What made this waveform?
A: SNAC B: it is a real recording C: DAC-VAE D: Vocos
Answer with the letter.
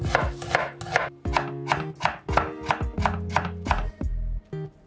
B